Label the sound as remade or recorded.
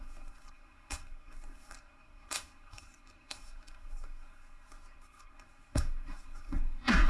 remade